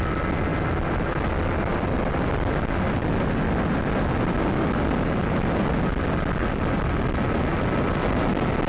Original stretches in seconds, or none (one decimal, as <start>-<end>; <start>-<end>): 0.0-8.7